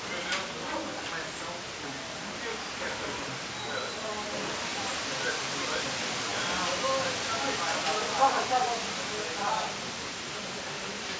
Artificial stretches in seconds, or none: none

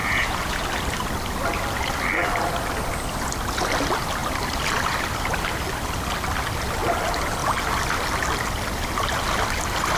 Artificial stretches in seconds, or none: 0.0-0.6 (vocoder, Vocos)

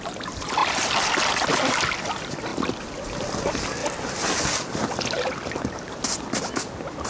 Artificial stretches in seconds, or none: none